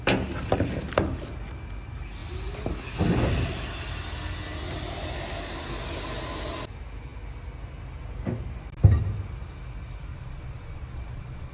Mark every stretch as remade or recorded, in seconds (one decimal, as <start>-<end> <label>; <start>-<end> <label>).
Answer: 0.0-10.1 recorded; 10.1-11.5 remade